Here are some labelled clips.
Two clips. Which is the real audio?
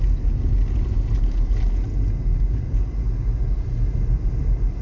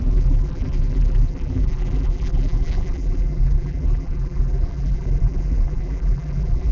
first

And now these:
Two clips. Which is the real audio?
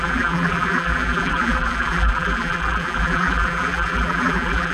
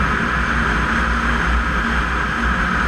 second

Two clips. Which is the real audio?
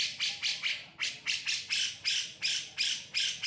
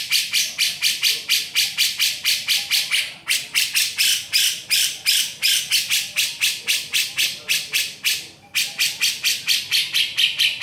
first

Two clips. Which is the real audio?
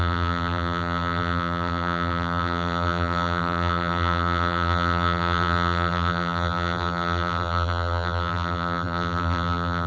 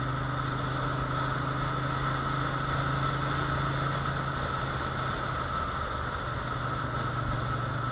second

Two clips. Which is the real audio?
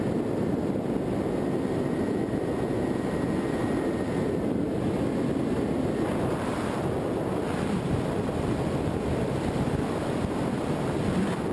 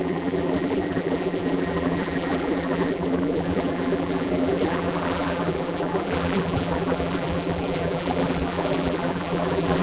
first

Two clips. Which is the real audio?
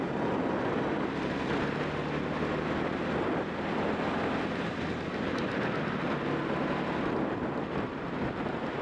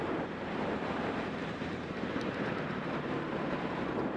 first